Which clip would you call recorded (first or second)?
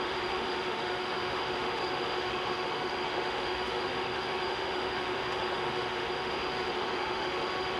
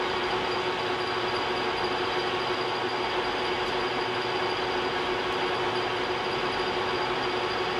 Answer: second